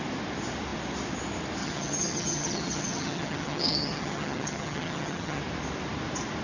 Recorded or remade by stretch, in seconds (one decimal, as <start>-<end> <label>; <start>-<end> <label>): 0.0-1.6 recorded; 1.6-5.4 remade; 5.4-6.4 recorded